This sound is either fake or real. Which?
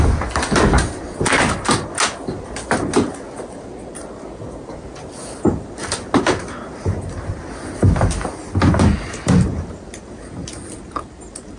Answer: real